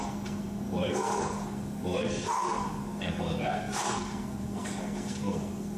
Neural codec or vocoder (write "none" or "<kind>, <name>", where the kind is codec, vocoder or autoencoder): codec, SNAC